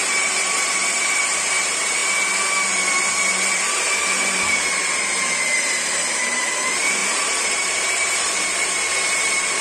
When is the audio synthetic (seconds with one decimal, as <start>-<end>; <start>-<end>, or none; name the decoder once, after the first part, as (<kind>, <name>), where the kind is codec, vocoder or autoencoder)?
0.0-2.0 (vocoder, BigVGAN v2); 3.1-9.6